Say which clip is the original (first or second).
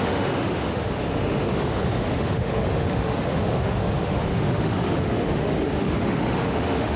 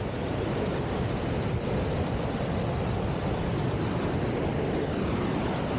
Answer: second